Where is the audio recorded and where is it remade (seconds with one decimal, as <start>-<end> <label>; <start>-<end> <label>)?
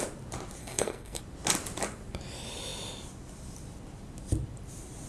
0.0-0.6 recorded; 0.6-1.2 remade; 1.2-5.1 recorded